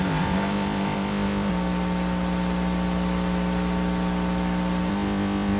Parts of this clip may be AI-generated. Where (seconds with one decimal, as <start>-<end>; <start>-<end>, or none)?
0.0-1.5; 4.9-5.6